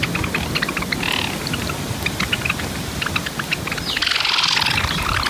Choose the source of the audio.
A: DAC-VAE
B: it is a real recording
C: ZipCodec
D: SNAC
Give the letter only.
B